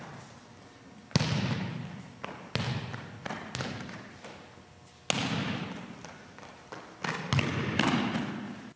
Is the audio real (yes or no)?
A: yes